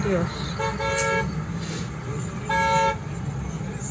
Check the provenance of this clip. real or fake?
real